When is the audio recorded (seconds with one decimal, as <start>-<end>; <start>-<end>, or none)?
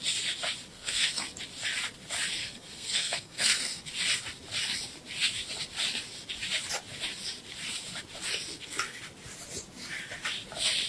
0.0-0.7; 1.2-2.4; 3.9-8.5; 9.0-10.9